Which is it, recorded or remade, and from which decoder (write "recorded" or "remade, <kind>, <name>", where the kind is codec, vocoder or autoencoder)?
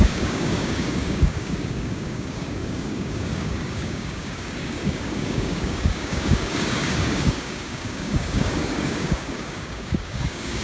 remade, codec, DAC